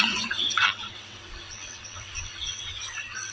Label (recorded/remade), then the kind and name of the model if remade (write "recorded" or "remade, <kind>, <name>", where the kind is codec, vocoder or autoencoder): remade, vocoder, WaveNeXt